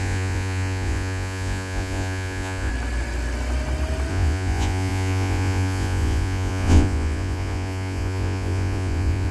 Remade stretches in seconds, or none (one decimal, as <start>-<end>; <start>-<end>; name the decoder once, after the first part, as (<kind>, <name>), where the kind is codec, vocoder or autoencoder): 0.0-2.7 (vocoder, Vocos); 4.1-9.3